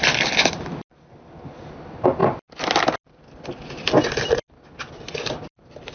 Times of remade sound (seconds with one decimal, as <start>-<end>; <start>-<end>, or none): none